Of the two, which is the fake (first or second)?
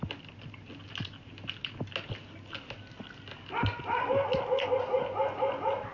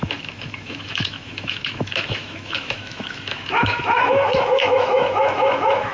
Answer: second